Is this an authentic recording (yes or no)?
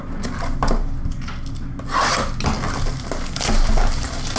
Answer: yes